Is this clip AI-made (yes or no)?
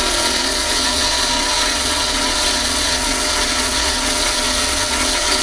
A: yes